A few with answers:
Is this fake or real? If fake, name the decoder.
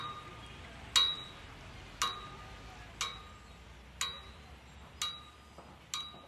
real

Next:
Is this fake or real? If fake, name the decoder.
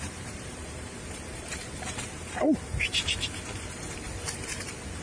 fake, vocoder, BigVGAN v2